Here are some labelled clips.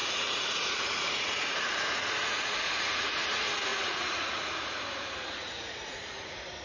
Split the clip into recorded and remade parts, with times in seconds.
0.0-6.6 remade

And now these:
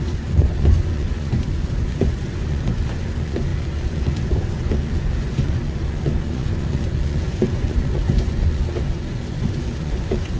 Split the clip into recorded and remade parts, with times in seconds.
0.0-10.4 remade

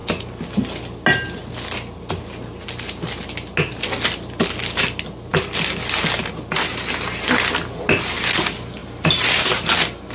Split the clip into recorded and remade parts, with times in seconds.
0.0-10.1 recorded

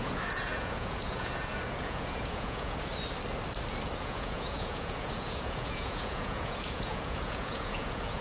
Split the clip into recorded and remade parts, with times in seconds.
0.0-2.9 remade; 2.9-4.0 recorded; 4.0-8.2 remade